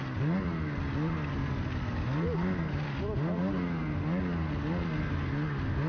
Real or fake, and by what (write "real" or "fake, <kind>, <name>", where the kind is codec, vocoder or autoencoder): real